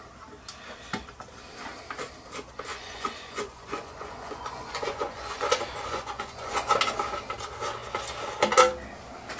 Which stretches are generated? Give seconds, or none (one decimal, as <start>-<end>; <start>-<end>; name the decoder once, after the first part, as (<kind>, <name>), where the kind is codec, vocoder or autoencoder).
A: 2.7-6.7 (vocoder, Vocos)